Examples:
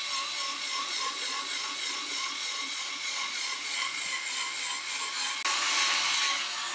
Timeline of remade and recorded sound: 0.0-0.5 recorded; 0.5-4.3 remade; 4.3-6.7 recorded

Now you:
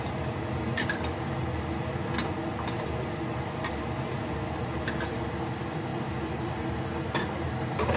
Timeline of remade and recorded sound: 0.0-8.0 recorded

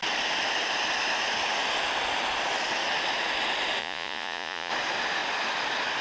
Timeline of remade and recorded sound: 0.0-3.8 recorded; 3.8-4.7 remade; 4.7-6.0 recorded

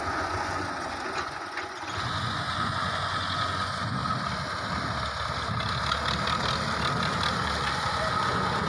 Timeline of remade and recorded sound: 0.0-4.0 remade; 4.0-7.6 recorded; 7.6-8.7 remade